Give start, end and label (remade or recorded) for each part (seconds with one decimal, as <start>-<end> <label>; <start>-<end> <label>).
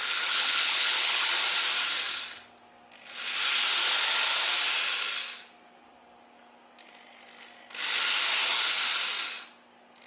0.0-1.3 remade; 1.3-10.1 recorded